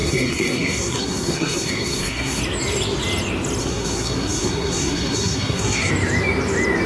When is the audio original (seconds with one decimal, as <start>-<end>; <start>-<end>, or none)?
2.4-3.6; 5.9-6.9